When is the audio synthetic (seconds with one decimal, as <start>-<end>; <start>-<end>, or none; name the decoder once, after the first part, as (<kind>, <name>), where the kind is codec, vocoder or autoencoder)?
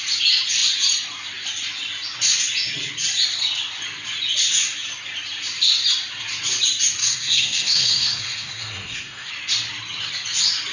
7.0-9.3 (codec, SNAC)